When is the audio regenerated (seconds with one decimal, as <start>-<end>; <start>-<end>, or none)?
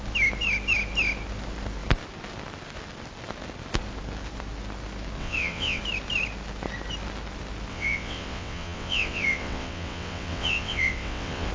5.2-5.8; 7.7-11.5